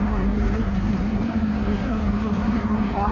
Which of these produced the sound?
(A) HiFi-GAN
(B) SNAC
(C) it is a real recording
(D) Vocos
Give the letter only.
B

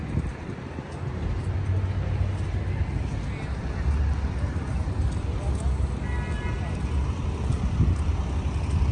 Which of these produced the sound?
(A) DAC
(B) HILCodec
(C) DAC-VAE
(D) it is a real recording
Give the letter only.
D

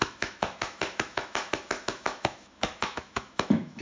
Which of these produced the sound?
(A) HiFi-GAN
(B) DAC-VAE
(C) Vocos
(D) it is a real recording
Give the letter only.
B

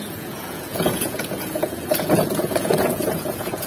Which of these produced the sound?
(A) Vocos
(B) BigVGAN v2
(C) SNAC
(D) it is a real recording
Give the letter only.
A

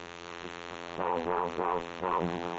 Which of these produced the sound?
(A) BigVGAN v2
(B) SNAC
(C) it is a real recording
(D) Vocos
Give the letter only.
A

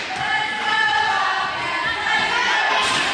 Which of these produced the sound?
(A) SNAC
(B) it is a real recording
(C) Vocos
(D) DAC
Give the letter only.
B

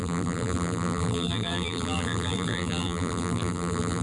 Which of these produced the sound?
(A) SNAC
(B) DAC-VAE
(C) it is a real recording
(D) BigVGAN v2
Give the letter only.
D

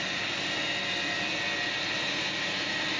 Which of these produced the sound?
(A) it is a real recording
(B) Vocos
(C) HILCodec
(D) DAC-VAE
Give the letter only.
A